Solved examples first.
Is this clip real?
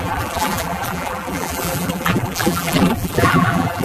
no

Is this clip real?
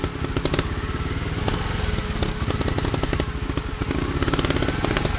yes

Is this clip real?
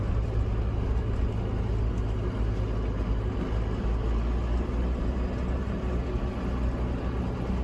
yes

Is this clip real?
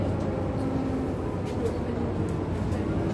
yes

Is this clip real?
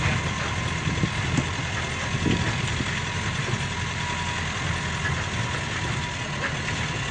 yes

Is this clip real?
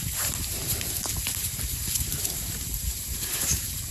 no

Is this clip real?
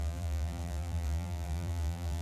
no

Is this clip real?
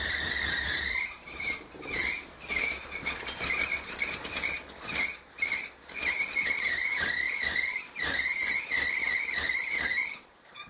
no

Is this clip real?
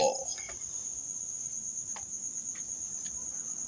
yes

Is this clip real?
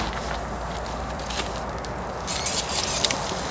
yes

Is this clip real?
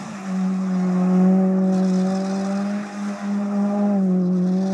yes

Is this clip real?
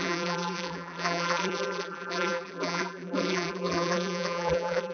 no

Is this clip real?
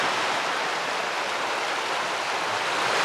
yes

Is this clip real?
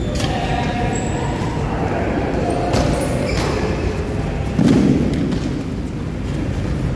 yes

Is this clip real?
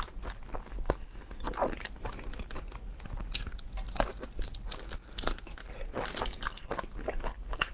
yes